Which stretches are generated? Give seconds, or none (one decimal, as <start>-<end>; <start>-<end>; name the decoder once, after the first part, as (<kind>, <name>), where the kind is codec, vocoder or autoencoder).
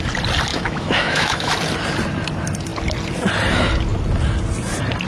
0.5-1.5 (autoencoder, DAC-VAE)